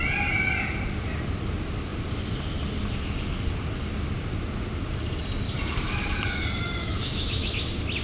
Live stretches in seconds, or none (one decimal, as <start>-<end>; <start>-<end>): 0.0-6.8; 7.5-8.0